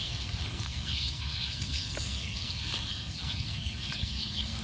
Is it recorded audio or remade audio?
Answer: remade